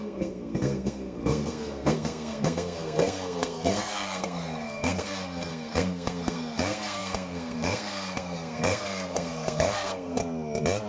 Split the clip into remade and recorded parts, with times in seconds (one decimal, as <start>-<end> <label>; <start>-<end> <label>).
0.0-10.2 remade; 10.2-10.9 recorded